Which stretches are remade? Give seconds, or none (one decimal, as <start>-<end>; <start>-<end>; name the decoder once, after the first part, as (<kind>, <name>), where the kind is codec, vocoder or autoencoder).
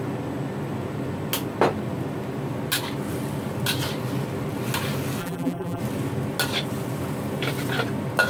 5.2-5.8 (vocoder, BigVGAN v2)